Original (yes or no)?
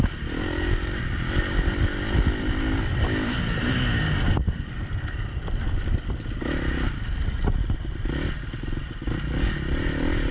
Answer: yes